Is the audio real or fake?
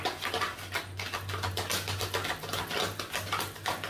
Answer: real